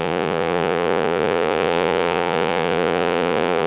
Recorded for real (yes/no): no